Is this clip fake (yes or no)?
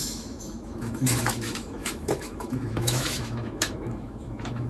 yes